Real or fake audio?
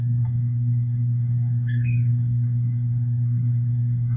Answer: fake